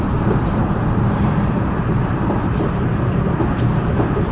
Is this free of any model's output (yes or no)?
no